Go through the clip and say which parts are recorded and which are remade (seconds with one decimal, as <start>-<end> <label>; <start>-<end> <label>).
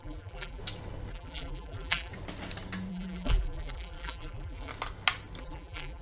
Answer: 0.0-0.6 remade; 0.6-1.1 recorded; 1.1-2.1 remade; 2.1-2.9 recorded; 2.9-4.7 remade; 4.7-5.4 recorded; 5.4-6.0 remade